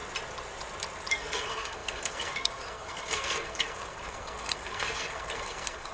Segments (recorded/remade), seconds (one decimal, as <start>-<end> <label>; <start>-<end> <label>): 0.0-1.1 recorded; 1.1-5.9 remade